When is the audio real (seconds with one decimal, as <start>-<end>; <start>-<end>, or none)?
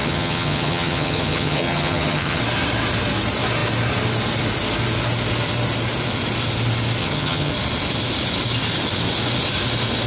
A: 2.4-7.0; 7.5-10.1